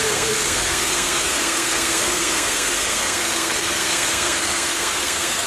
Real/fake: fake